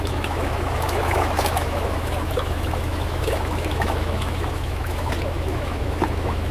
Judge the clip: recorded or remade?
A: remade